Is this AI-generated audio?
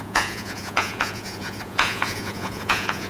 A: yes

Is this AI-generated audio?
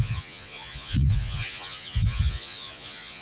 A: yes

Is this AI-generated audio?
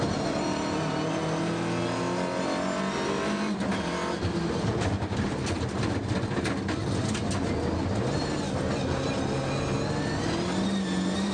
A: no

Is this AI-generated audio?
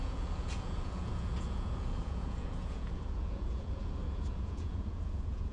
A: yes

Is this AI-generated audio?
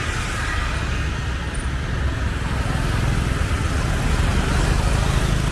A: no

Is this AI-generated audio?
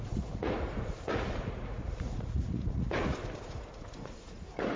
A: yes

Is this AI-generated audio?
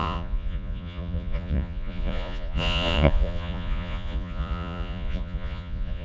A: yes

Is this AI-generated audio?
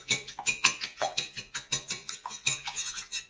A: yes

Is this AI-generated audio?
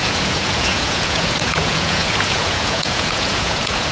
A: yes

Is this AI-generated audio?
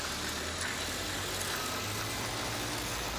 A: no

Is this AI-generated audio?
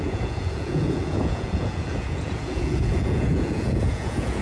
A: yes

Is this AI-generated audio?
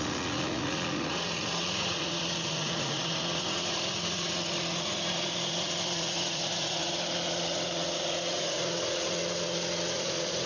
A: yes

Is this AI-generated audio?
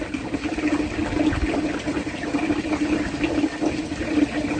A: no